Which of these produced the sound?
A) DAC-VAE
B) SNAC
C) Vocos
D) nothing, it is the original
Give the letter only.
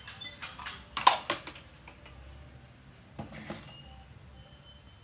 D